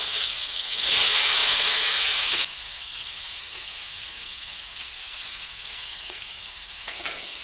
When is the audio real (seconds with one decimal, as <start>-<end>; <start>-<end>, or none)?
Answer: none